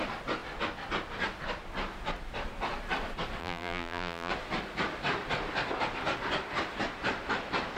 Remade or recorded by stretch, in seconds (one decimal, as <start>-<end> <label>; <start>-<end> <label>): 0.0-3.4 recorded; 3.4-4.3 remade; 4.3-7.8 recorded